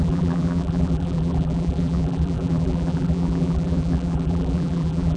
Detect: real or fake fake